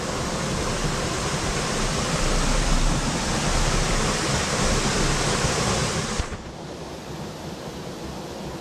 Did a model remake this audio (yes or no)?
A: no